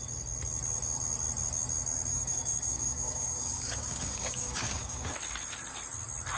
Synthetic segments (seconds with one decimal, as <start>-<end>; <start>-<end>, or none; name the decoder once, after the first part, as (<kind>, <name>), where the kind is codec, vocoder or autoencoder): 2.1-5.1 (codec, DAC)